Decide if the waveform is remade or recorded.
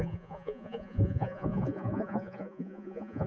remade